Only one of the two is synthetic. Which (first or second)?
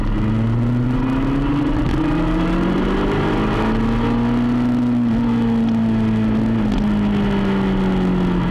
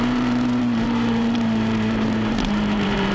second